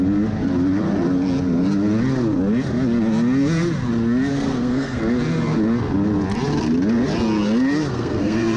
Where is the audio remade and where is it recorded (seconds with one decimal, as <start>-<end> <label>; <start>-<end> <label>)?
0.0-4.3 recorded; 4.3-5.0 remade; 5.0-7.9 recorded; 7.9-8.6 remade